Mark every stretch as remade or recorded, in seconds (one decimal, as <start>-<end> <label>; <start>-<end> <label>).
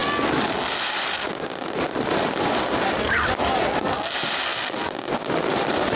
0.0-6.0 recorded